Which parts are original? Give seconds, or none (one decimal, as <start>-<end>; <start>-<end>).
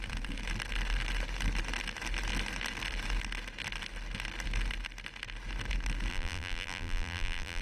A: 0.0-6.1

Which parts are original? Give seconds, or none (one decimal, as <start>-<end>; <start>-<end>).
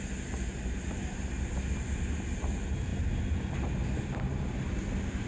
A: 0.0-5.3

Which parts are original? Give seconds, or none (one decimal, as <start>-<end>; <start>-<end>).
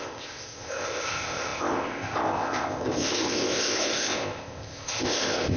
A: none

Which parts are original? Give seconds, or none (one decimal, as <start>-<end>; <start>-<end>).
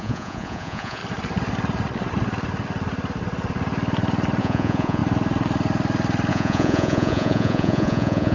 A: 1.0-4.4; 5.0-6.3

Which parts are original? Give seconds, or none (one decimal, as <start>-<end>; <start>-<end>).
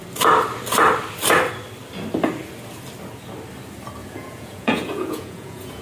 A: 0.0-4.0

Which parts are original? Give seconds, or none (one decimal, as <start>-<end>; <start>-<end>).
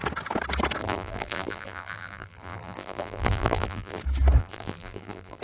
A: 0.0-0.8; 4.0-4.4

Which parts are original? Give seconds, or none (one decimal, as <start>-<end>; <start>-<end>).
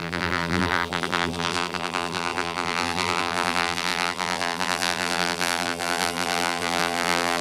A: none